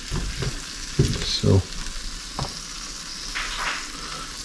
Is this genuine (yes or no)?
yes